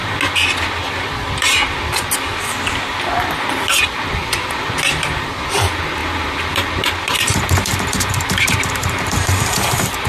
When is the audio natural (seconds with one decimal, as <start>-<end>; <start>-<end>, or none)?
0.0-1.4; 2.3-4.0